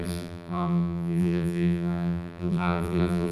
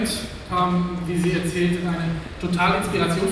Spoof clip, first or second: first